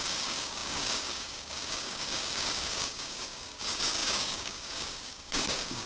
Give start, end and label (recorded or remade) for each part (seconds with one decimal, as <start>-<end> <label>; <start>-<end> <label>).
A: 0.0-5.9 remade